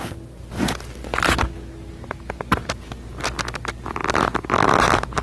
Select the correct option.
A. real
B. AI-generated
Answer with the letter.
A